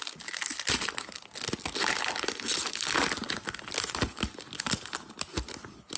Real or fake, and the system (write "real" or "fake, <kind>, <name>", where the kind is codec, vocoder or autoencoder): real